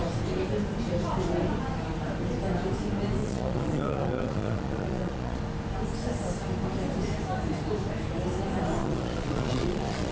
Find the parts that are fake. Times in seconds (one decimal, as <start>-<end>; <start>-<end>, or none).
3.2-5.4; 8.8-10.1